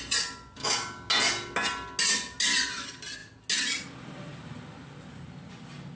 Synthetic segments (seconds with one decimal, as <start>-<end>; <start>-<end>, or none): 0.6-1.1